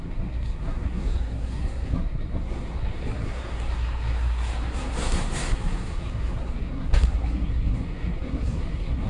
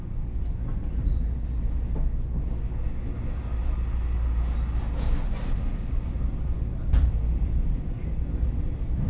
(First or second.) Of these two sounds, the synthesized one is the first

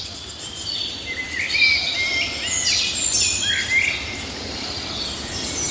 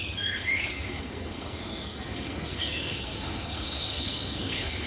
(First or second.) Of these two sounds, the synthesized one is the second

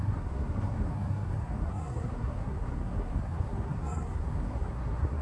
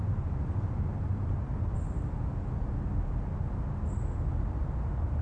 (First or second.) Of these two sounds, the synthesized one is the first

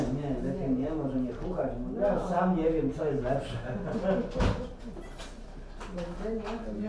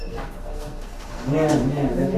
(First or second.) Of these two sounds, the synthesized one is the second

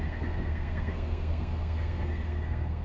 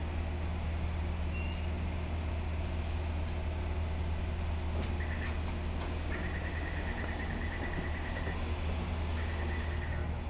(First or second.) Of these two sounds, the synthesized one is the first